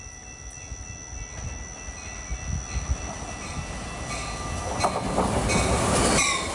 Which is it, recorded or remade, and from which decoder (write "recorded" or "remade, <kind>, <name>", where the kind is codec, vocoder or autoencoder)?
recorded